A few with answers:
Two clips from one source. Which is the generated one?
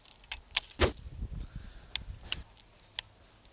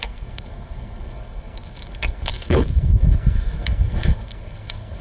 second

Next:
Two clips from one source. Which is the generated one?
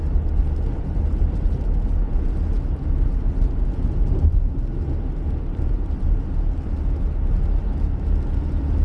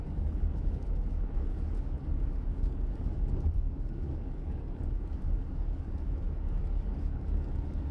second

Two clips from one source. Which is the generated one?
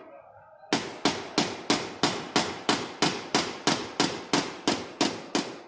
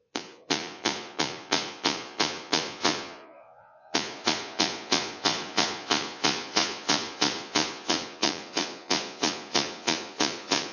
second